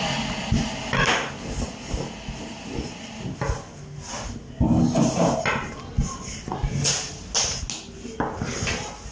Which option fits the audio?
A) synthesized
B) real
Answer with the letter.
B